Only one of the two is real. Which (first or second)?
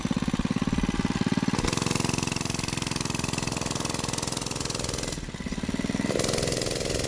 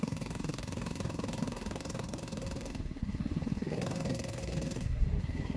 first